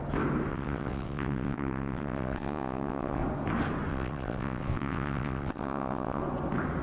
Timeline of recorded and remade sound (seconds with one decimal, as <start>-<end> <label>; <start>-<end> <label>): 0.0-0.5 recorded; 0.5-3.2 remade; 3.2-3.9 recorded; 3.9-6.2 remade; 6.2-6.8 recorded